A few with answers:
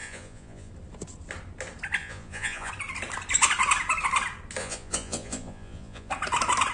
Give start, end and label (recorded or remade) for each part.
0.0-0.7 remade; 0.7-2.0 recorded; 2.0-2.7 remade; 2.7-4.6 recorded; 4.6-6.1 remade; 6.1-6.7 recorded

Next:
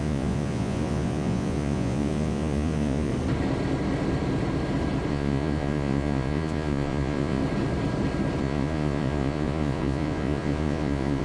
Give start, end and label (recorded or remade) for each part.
0.0-3.1 remade; 3.1-5.1 recorded; 5.1-7.4 remade; 7.4-8.4 recorded; 8.4-11.2 remade

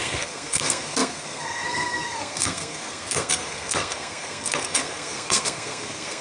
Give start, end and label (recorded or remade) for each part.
0.0-6.2 remade

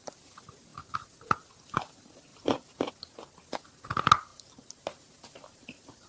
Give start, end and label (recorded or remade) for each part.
0.0-2.3 recorded; 2.3-2.9 remade; 2.9-4.3 recorded; 4.3-6.1 remade

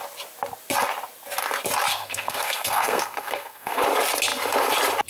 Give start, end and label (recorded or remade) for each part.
0.0-1.9 recorded; 1.9-3.8 remade; 3.8-5.1 recorded

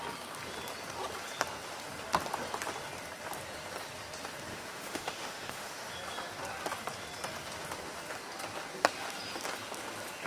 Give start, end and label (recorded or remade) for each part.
0.0-4.5 recorded; 4.5-5.9 remade; 5.9-10.3 recorded

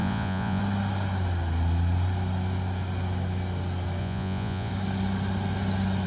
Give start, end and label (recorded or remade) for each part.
0.0-0.6 remade; 0.6-4.0 recorded; 4.0-4.7 remade; 4.7-6.1 recorded